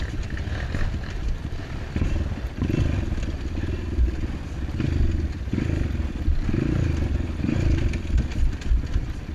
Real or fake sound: real